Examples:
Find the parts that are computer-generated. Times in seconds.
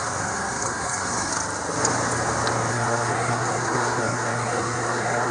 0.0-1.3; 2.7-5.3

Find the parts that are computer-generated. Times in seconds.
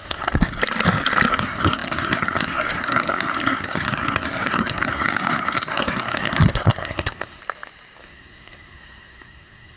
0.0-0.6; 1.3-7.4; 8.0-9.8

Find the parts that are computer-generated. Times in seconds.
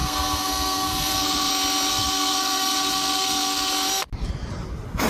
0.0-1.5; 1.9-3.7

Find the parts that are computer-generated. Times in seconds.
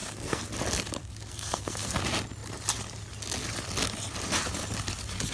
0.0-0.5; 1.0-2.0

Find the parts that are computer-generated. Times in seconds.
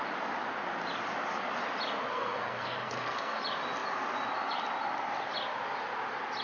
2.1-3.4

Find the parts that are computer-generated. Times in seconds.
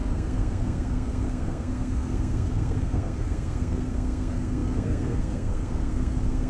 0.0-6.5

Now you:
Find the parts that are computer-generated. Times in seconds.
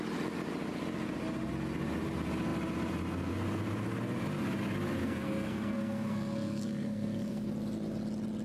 5.0-7.5